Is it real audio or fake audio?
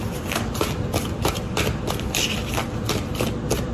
real